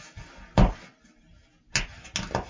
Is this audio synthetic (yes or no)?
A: no